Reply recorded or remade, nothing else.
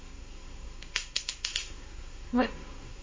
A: remade